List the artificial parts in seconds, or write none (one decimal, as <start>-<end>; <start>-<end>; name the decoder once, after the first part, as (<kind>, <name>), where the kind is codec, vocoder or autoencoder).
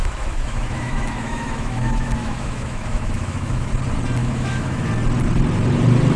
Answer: 0.0-3.7 (autoencoder, DAC-VAE); 4.2-4.9